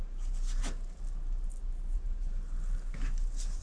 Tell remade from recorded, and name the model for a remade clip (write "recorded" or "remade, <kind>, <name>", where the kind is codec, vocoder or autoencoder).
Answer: recorded